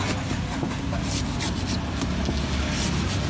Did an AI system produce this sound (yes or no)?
no